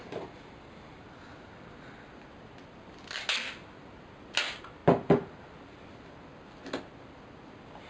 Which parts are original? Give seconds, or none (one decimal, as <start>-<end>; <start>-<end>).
0.0-7.9